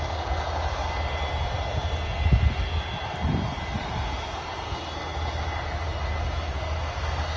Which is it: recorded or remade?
recorded